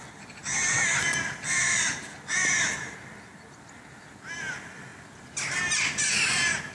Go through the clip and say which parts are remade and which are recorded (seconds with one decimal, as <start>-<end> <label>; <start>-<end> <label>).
0.0-6.7 recorded